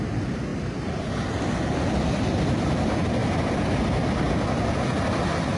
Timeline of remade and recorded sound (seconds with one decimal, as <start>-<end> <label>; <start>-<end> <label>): 0.0-3.2 recorded; 3.2-3.9 remade; 3.9-5.6 recorded